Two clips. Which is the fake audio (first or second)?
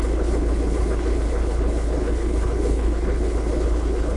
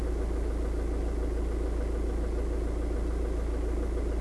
first